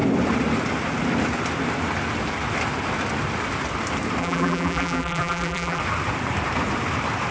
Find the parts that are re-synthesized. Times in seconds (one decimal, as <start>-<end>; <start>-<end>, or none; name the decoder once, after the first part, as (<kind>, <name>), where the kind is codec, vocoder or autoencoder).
4.2-5.8 (vocoder, BigVGAN v2)